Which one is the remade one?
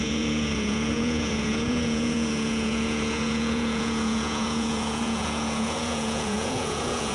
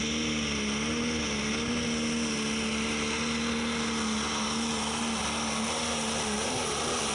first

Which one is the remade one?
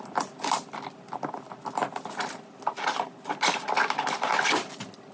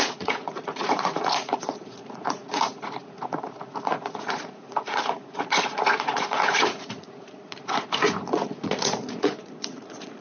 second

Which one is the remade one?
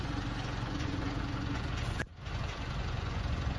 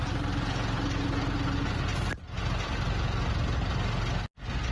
first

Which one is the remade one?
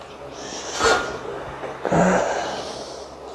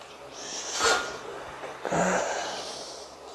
second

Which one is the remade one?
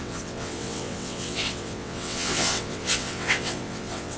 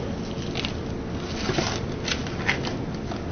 first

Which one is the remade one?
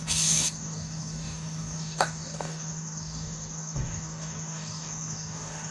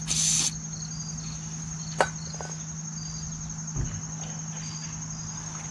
first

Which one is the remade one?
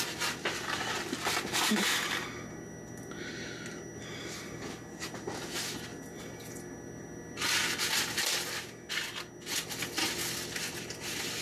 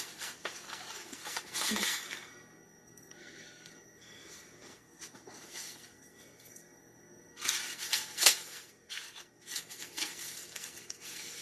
second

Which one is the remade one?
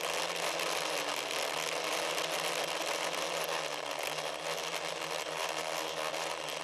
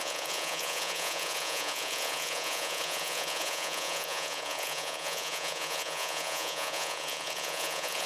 second